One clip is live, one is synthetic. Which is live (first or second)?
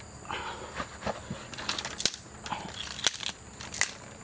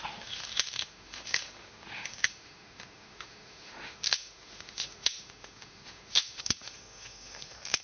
first